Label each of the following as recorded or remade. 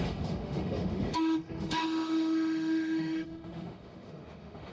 remade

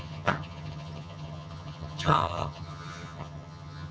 remade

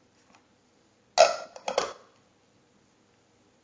recorded